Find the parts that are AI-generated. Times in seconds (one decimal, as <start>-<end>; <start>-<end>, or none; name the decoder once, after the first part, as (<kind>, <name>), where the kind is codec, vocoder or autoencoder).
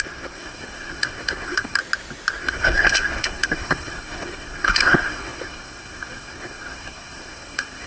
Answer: 0.0-1.8 (codec, SNAC); 2.4-7.9